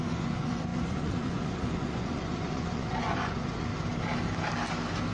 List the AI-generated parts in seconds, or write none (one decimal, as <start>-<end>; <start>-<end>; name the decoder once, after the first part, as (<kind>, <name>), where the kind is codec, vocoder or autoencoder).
0.0-3.7 (vocoder, Vocos)